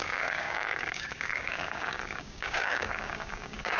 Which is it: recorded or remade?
remade